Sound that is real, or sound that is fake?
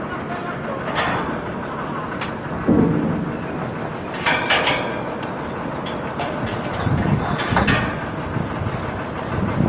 real